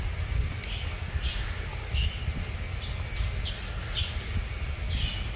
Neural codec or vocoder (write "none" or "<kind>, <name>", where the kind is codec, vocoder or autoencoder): none